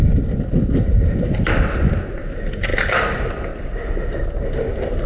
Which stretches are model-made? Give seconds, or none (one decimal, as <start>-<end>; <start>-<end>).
none